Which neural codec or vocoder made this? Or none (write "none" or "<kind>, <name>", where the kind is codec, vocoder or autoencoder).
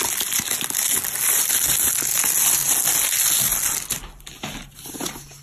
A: none